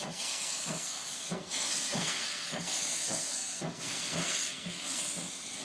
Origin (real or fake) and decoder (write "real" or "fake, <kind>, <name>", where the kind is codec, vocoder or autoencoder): fake, codec, SNAC